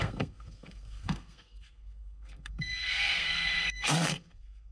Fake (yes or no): yes